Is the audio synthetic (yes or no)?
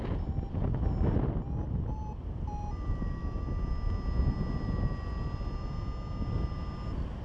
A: no